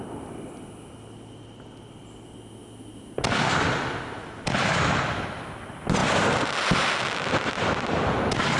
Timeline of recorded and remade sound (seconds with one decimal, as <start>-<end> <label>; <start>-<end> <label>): 0.0-8.6 recorded